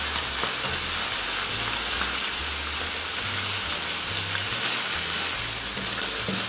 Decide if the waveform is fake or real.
real